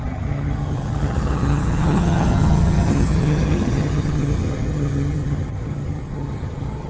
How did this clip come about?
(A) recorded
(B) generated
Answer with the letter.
B